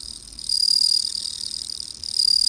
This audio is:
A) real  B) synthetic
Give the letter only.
A